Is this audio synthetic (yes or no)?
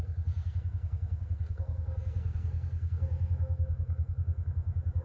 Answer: yes